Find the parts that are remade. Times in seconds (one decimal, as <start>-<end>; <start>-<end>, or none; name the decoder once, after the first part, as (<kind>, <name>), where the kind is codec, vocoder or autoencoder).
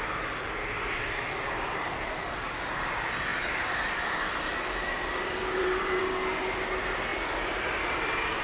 3.3-6.0 (vocoder, BigVGAN v2); 7.1-8.4